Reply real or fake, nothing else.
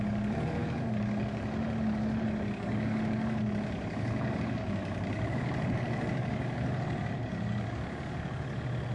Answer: fake